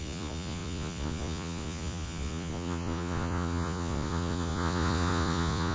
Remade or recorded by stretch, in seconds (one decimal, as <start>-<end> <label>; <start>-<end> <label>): 0.0-5.7 remade